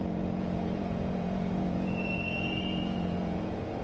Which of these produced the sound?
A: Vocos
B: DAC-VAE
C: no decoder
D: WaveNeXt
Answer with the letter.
A